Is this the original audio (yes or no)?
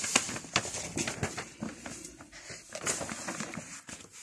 yes